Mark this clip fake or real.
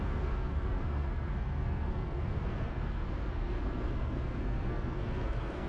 fake